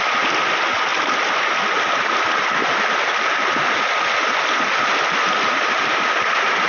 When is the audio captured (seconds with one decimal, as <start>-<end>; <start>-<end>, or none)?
0.0-6.7